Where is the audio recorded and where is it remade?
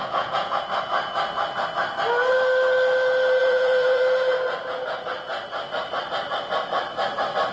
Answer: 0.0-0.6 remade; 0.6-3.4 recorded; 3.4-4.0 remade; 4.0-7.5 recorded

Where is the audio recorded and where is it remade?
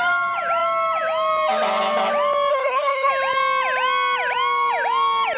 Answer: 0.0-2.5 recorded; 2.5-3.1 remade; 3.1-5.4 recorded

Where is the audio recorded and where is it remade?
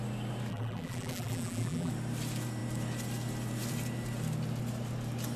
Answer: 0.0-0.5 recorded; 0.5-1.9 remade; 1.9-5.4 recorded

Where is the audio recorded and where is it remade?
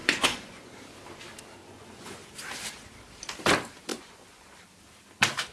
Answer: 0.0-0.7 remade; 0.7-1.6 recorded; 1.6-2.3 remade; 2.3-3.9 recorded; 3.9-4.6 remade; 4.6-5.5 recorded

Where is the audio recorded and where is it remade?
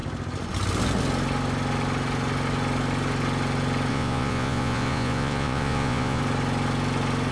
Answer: 0.0-3.9 recorded; 3.9-6.2 remade; 6.2-7.3 recorded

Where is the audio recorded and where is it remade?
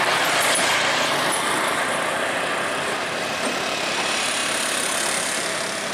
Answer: 0.0-5.9 recorded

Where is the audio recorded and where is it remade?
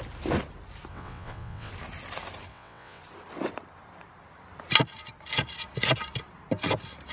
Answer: 0.0-0.9 recorded; 0.9-1.7 remade; 1.7-2.5 recorded; 2.5-3.0 remade; 3.0-7.1 recorded